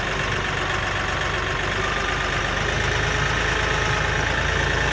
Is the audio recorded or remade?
recorded